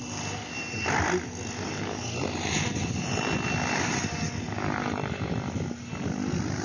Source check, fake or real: real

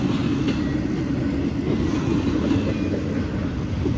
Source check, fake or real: real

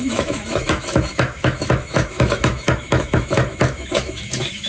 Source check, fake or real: fake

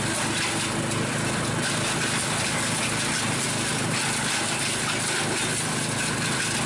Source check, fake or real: real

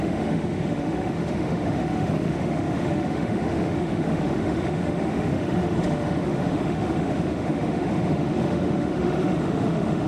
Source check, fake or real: fake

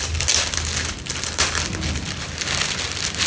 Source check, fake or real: real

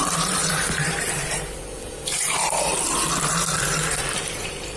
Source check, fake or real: fake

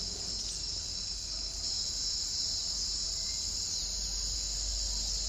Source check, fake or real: real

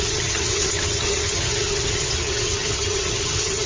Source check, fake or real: fake